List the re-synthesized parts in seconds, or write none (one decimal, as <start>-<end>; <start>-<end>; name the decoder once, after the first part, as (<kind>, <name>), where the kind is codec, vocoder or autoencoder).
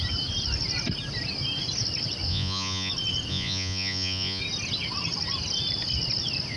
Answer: 2.3-2.9 (vocoder, Vocos); 3.3-4.4